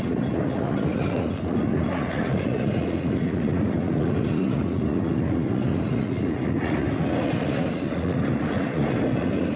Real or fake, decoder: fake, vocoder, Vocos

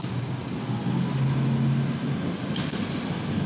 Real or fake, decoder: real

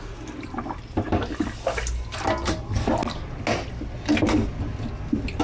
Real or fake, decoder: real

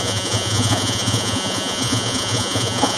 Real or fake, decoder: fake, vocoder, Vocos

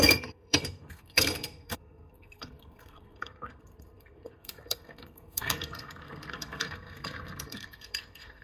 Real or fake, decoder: fake, codec, SNAC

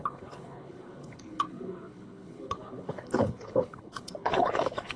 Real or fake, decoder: fake, codec, HILCodec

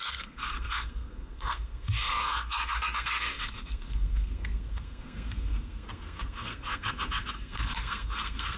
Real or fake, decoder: fake, codec, SNAC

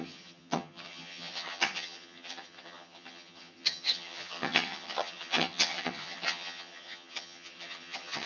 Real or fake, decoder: fake, vocoder, HiFi-GAN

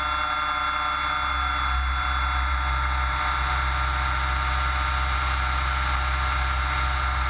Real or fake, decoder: real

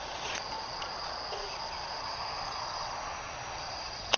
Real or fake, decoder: fake, vocoder, Vocos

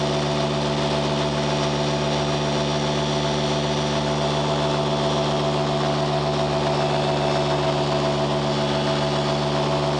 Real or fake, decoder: real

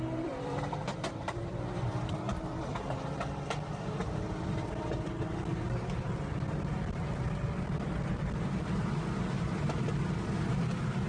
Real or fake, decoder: fake, vocoder, BigVGAN v2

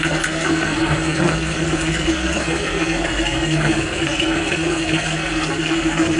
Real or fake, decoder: fake, codec, SNAC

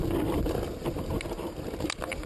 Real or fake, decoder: real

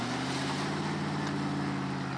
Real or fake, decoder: real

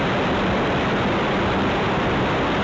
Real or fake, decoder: fake, vocoder, BigVGAN v2